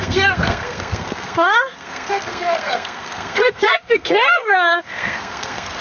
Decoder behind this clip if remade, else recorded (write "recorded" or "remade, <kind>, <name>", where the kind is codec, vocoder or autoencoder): remade, codec, SNAC